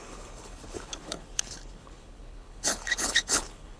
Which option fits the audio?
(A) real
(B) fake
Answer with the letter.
B